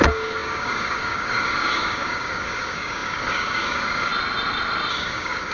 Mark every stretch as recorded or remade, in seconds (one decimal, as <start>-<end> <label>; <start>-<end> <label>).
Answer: 0.0-4.1 remade; 4.1-4.9 recorded; 4.9-5.5 remade